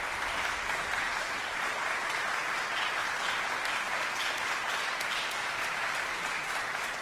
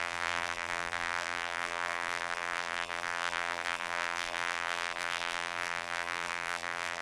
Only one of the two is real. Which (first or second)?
first